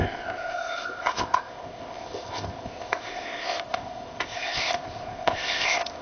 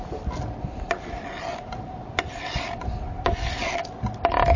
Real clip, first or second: second